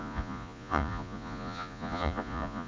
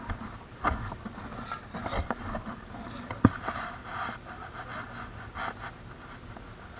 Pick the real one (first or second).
second